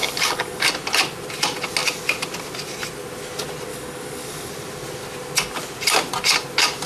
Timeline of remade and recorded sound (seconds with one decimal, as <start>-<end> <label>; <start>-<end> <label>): 0.0-0.7 remade; 0.7-3.7 recorded; 3.7-4.5 remade; 4.5-6.9 recorded

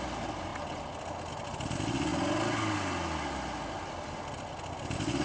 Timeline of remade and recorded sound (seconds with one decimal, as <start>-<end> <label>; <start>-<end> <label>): 0.0-5.2 recorded